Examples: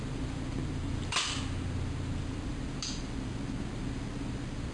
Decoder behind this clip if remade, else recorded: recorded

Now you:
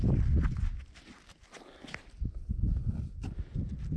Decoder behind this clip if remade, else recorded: recorded